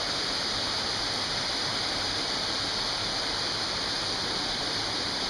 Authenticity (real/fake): real